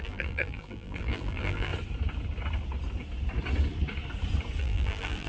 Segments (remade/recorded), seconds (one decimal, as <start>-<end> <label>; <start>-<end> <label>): 0.0-1.7 remade; 1.7-4.6 recorded; 4.6-5.3 remade